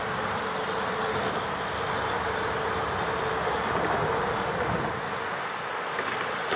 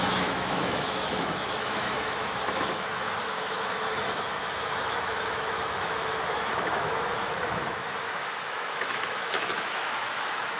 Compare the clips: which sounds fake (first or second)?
second